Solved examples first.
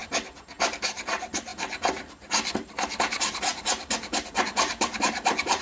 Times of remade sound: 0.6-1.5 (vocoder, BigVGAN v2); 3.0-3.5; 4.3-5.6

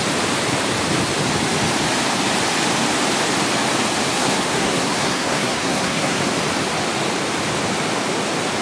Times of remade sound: 4.1-6.2 (codec, SNAC)

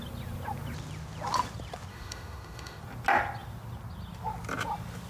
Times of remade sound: 1.9-2.8 (autoencoder, DAC-VAE)